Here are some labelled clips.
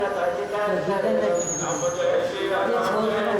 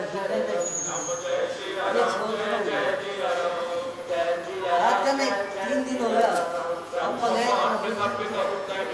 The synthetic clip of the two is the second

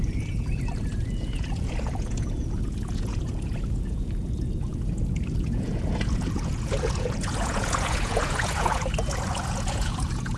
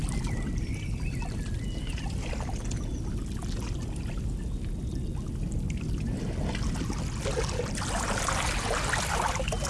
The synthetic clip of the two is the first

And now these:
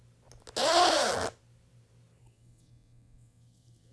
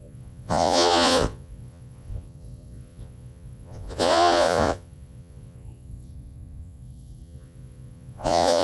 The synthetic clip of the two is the second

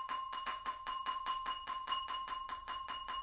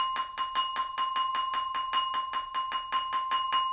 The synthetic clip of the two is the first